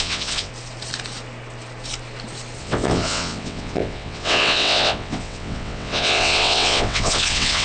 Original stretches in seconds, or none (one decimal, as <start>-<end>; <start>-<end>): 0.5-2.6